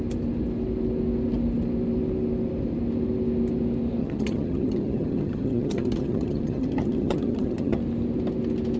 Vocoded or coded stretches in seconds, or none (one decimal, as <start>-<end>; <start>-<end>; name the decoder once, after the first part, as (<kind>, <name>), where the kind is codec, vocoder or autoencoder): 4.0-7.8 (vocoder, HiFi-GAN)